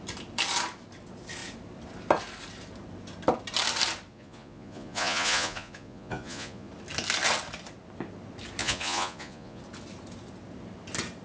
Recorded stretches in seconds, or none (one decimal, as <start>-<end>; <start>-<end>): 0.0-4.1; 6.7-8.6; 9.6-11.2

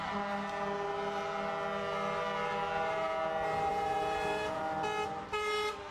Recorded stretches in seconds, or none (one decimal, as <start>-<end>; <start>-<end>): 0.0-3.7; 4.6-5.9

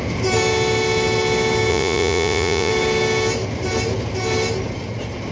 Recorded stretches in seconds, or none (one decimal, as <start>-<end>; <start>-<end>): 0.0-1.7; 2.7-5.3

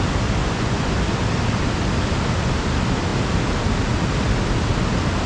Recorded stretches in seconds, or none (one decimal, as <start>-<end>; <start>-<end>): 0.0-0.4; 0.9-5.3